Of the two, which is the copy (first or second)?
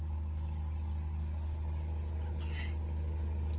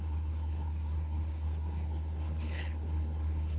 second